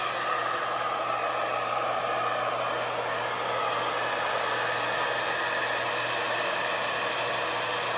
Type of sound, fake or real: real